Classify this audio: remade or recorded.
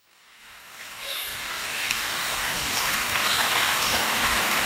remade